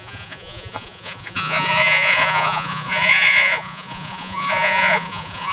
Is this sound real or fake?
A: fake